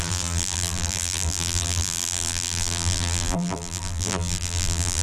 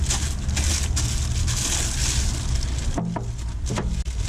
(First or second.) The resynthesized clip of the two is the first